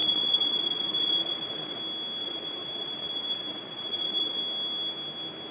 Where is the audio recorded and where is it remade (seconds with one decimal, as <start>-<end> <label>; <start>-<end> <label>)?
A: 0.0-1.8 remade; 1.8-2.2 recorded; 2.2-4.4 remade; 4.4-5.5 recorded